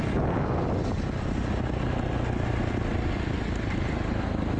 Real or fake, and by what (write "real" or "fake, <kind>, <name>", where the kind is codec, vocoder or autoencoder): real